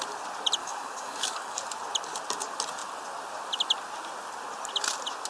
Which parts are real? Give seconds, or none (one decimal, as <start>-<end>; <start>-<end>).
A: 0.0-0.6; 1.6-5.3